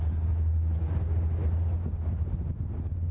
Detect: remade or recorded recorded